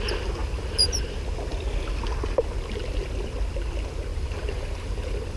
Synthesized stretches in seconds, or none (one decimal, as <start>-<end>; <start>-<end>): 0.4-1.0; 4.1-5.4